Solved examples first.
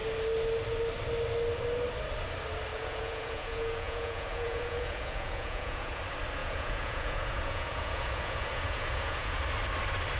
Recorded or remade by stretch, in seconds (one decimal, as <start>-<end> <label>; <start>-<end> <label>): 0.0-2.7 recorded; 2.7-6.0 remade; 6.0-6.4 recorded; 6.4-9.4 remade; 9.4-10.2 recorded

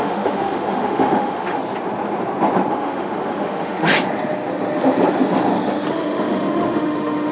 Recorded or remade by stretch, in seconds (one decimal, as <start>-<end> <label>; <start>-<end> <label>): 0.0-1.6 remade; 1.6-2.7 recorded; 2.7-3.9 remade; 3.9-5.9 recorded; 5.9-7.3 remade

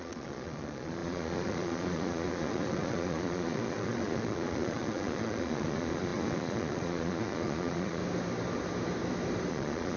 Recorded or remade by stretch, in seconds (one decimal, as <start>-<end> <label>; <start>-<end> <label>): 0.0-8.0 remade; 8.0-9.5 recorded; 9.5-10.0 remade

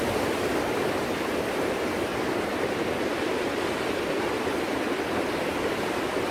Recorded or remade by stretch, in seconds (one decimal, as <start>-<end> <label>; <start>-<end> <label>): 0.0-6.3 recorded

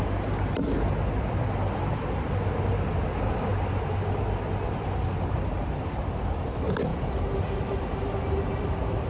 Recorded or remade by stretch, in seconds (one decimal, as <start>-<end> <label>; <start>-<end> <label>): 0.0-9.1 recorded